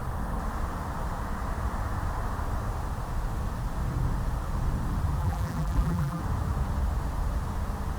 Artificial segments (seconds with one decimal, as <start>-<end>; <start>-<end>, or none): 5.2-6.2